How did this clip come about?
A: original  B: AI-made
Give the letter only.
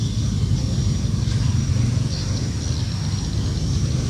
A